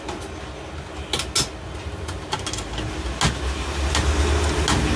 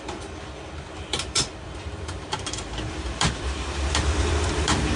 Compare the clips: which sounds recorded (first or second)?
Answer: first